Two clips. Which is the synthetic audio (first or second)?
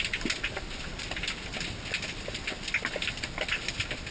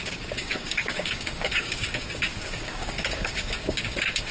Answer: second